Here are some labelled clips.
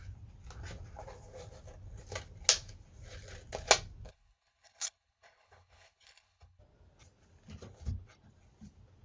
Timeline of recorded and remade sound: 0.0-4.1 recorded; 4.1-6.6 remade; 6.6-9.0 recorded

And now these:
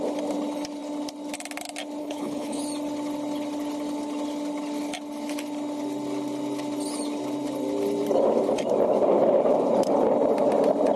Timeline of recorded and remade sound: 0.0-2.0 recorded; 2.0-2.6 remade; 2.6-11.0 recorded